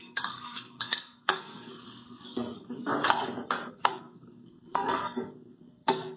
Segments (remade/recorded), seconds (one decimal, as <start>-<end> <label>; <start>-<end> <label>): 0.0-2.9 remade; 2.9-3.7 recorded; 3.7-6.2 remade

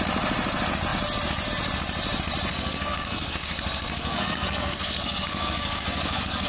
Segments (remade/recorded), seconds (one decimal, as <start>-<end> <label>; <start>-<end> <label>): 0.0-2.5 recorded; 2.5-6.5 remade

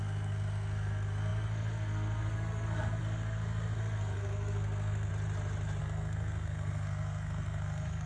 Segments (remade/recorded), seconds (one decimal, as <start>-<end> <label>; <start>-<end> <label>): 0.0-5.1 remade; 5.1-5.8 recorded; 5.8-8.1 remade

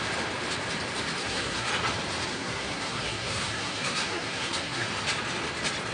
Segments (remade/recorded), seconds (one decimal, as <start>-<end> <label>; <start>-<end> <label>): 0.0-1.2 recorded; 1.2-1.7 remade; 1.7-2.3 recorded; 2.3-4.9 remade; 4.9-5.9 recorded

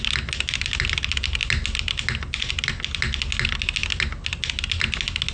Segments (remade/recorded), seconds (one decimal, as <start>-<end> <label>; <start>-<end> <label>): 0.0-5.3 recorded

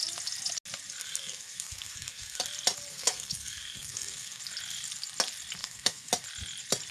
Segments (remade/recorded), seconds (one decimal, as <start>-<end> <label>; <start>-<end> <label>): 0.0-1.0 recorded; 1.0-2.4 remade; 2.4-2.9 recorded; 2.9-4.4 remade; 4.4-5.6 recorded; 5.6-6.1 remade; 6.1-6.9 recorded